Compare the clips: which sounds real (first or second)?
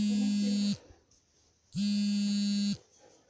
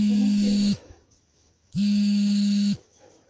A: first